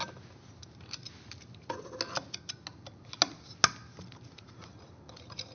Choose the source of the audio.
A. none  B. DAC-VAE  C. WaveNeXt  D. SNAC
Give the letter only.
A